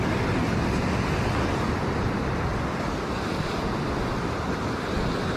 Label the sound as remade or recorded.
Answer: recorded